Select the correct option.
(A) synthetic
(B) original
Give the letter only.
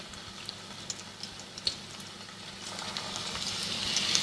B